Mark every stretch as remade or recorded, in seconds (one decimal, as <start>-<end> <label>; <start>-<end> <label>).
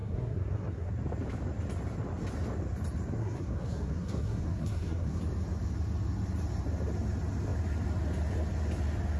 0.0-0.9 remade; 0.9-3.2 recorded; 3.2-5.2 remade; 5.2-9.2 recorded